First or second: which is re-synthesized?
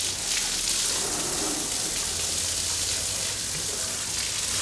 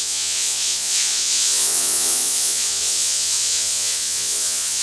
second